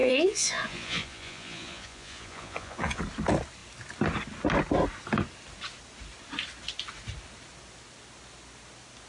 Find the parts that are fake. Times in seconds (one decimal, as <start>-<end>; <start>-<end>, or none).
0.0-3.0